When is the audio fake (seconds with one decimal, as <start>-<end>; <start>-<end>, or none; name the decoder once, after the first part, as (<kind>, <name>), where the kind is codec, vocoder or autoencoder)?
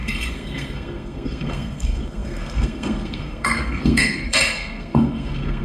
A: 0.0-5.6 (codec, SNAC)